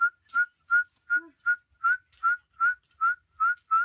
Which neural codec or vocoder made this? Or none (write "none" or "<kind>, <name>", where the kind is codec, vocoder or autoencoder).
none